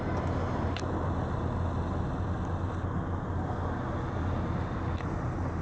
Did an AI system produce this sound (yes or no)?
no